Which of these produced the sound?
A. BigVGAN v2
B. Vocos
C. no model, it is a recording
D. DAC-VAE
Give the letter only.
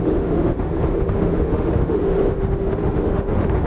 D